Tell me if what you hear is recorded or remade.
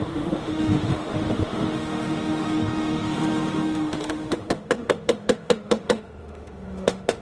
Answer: remade